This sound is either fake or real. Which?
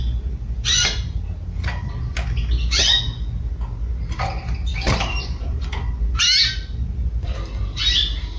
real